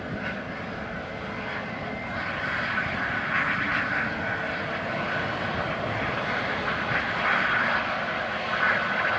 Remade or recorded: recorded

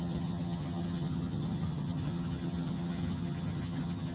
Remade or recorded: remade